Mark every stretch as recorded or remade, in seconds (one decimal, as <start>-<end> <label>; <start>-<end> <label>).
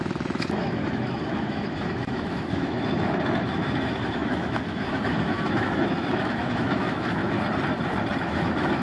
0.0-7.2 remade; 7.2-8.2 recorded; 8.2-8.8 remade